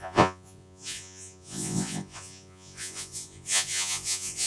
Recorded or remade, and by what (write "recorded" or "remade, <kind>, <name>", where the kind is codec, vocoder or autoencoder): remade, vocoder, Vocos